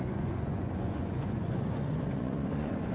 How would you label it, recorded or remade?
remade